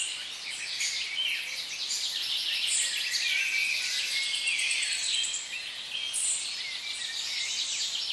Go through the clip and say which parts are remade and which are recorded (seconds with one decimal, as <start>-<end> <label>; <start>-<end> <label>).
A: 0.0-8.1 recorded